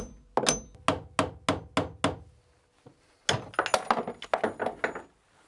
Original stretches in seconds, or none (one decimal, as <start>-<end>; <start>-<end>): 0.0-5.5